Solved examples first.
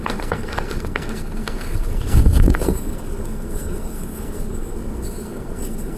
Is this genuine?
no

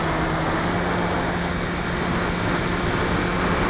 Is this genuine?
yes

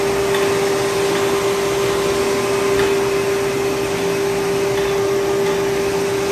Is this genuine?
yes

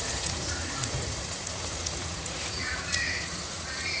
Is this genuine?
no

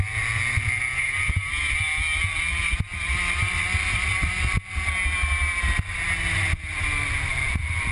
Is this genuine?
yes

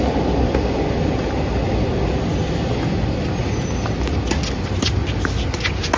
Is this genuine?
yes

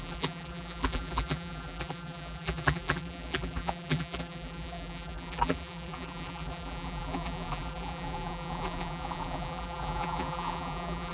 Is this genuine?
no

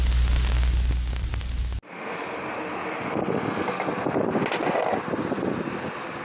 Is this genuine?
yes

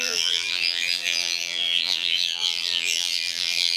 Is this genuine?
no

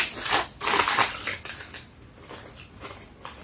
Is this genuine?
yes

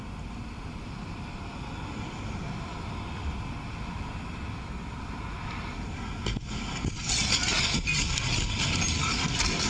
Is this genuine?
yes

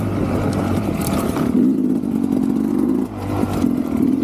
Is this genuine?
yes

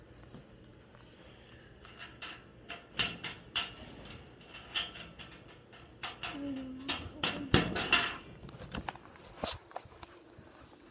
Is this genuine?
yes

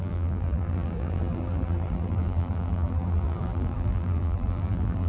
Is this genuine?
no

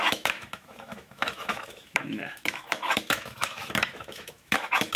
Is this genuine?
no